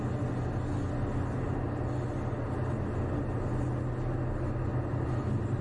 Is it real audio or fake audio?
real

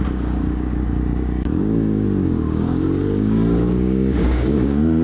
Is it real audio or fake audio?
fake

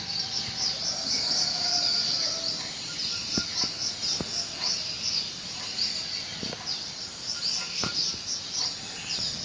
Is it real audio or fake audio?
real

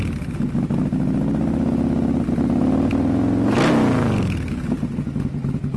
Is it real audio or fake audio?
real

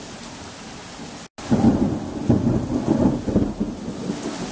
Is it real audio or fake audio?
real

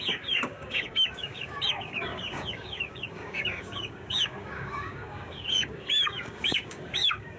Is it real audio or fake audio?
fake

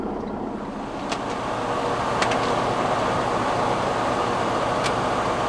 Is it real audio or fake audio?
real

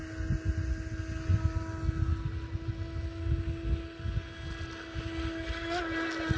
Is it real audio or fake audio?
real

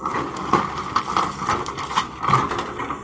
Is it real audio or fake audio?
real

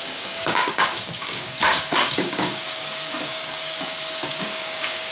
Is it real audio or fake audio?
fake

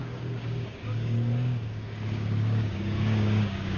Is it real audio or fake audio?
fake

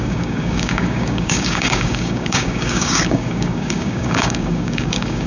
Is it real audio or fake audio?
fake